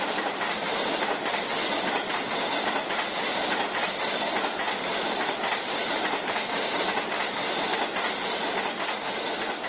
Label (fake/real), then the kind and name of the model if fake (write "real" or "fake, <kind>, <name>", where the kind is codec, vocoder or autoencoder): real